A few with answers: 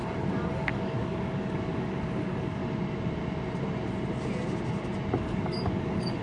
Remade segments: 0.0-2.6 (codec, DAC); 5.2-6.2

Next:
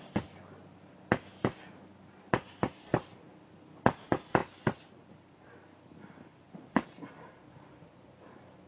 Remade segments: none

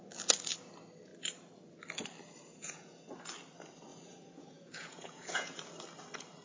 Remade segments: 2.5-3.1 (vocoder, Vocos); 3.9-5.6

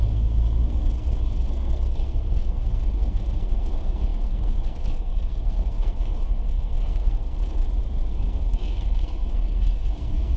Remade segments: 0.0-7.6 (codec, SNAC); 8.1-10.4